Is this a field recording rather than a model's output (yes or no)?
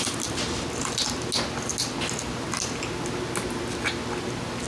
yes